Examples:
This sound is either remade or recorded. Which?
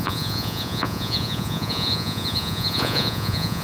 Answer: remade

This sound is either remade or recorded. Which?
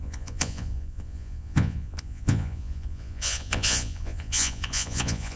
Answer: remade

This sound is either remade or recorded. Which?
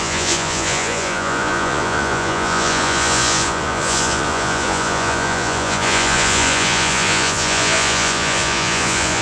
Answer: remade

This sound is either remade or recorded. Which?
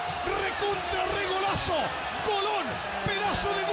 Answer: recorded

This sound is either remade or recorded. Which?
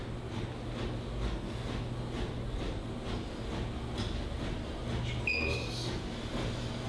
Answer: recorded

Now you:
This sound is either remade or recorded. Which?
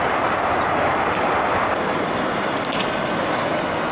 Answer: recorded